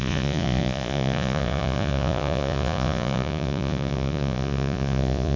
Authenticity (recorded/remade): remade